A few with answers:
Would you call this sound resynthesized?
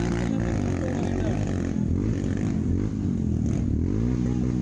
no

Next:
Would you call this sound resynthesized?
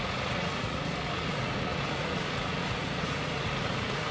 yes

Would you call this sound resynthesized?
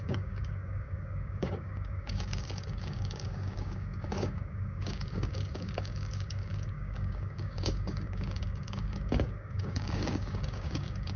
yes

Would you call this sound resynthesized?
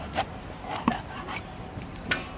yes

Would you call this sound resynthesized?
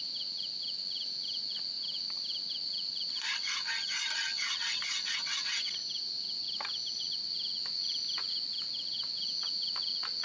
no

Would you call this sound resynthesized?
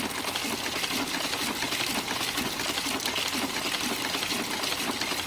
no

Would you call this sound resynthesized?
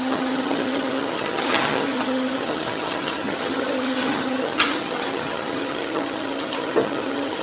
yes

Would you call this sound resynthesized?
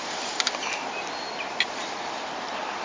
no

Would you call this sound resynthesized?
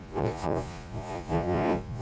yes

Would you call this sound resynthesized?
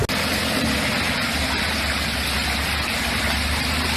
no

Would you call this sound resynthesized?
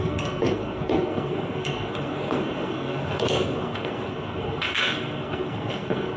yes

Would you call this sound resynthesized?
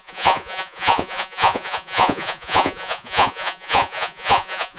yes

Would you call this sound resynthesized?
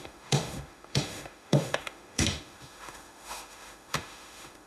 yes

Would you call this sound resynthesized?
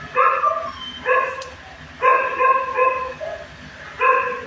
no